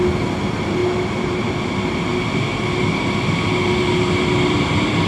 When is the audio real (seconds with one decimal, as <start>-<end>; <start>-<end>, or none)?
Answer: 0.0-5.1